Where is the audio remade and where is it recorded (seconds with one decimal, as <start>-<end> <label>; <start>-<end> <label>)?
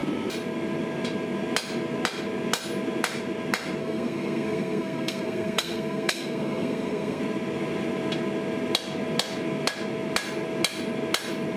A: 0.0-3.8 recorded; 3.8-7.2 remade; 7.2-11.6 recorded